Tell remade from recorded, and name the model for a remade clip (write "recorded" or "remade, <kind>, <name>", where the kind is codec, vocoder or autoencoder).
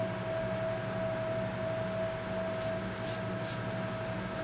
recorded